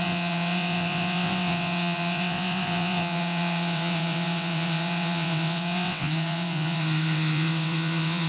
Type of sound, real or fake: fake